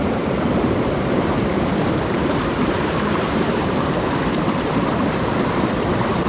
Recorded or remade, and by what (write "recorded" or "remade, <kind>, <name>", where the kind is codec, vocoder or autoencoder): remade, vocoder, BigVGAN v2